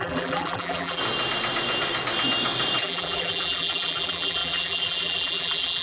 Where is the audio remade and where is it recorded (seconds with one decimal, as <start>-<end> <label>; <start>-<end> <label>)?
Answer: 0.0-1.0 remade; 1.0-2.8 recorded; 2.8-5.8 remade